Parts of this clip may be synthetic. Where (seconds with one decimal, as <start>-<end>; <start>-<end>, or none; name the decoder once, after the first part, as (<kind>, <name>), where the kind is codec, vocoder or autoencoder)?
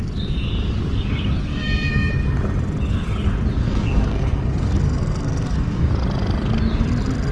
1.5-2.1 (codec, SNAC); 3.6-5.9